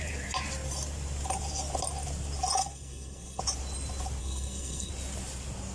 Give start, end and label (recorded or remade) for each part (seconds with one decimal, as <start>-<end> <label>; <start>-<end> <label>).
0.0-2.6 recorded; 2.6-3.4 remade; 3.4-4.2 recorded; 4.2-4.9 remade; 4.9-5.7 recorded